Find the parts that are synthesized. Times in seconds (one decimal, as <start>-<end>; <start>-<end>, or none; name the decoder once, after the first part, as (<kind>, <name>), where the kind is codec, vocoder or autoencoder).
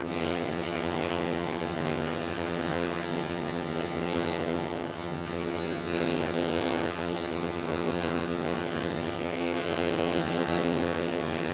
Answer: 0.0-11.5 (vocoder, HiFi-GAN)